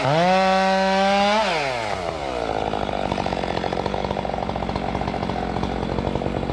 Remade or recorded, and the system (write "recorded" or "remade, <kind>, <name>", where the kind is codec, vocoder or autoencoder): recorded